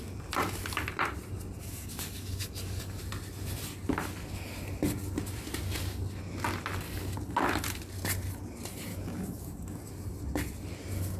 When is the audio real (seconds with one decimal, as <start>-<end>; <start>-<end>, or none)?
0.0-1.6; 3.0-8.9; 9.9-11.2